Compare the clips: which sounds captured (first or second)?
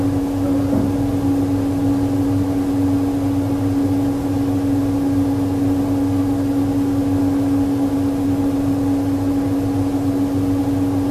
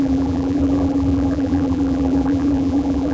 first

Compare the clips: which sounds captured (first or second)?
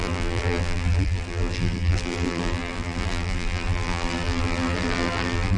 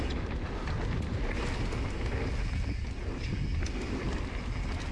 second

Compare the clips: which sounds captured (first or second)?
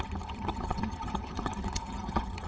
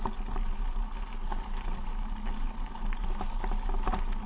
second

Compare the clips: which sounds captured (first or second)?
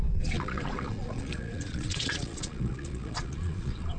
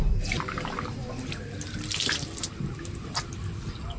second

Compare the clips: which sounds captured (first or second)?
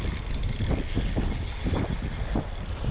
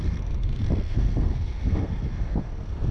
first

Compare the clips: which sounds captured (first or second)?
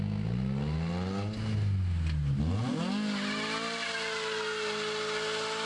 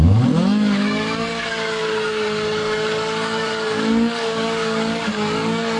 first